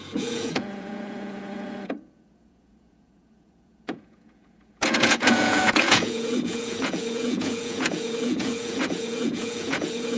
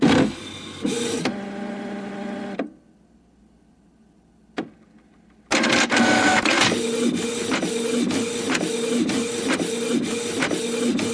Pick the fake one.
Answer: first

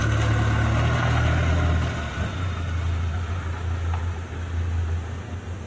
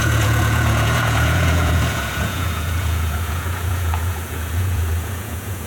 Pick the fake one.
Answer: second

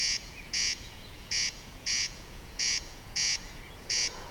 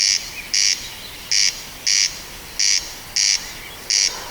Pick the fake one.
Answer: first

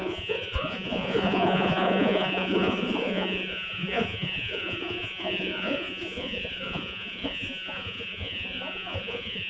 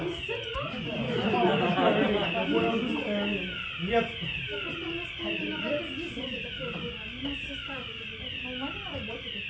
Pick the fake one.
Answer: first